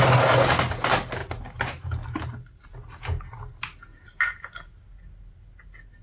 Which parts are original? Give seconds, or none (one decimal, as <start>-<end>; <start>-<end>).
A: 0.0-6.0

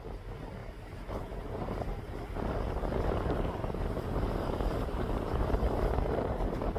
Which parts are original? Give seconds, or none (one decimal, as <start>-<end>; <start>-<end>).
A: 0.0-0.6; 2.1-2.9

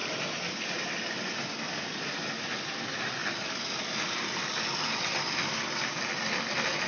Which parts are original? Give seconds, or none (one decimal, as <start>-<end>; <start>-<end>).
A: 2.3-3.2; 5.9-6.9

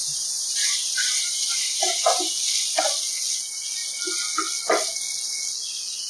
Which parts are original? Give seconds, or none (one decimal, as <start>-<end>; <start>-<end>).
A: 2.4-6.1